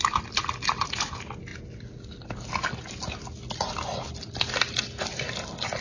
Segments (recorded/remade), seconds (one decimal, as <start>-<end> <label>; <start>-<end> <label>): 0.0-5.8 recorded